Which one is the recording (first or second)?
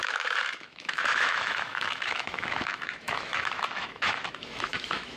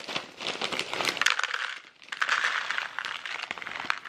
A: second